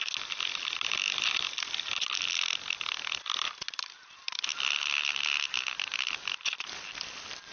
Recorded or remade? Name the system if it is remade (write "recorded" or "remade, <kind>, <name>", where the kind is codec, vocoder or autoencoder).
recorded